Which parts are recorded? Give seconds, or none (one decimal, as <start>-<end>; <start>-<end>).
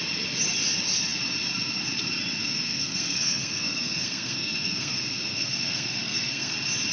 0.0-2.4; 6.5-6.9